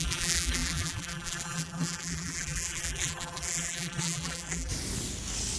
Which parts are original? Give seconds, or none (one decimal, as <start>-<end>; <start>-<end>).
4.7-5.6